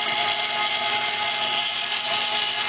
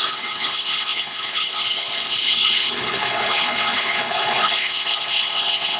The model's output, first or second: second